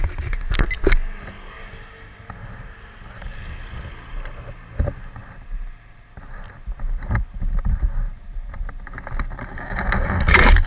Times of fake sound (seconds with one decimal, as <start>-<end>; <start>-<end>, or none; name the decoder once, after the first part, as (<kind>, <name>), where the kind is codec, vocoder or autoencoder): none